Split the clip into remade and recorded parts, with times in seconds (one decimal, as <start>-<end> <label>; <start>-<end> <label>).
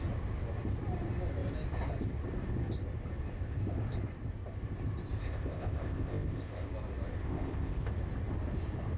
0.0-5.2 recorded; 5.2-6.7 remade; 6.7-7.2 recorded; 7.2-7.9 remade; 7.9-9.0 recorded